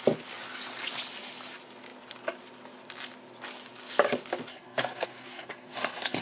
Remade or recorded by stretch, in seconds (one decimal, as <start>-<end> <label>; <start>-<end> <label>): 0.0-4.5 recorded; 4.5-6.2 remade